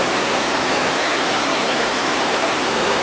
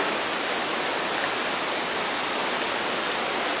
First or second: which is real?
second